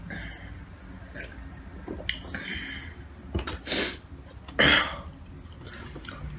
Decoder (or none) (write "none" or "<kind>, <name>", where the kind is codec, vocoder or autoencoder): none